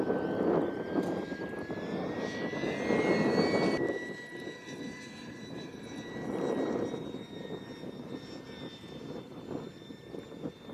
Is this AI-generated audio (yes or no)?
no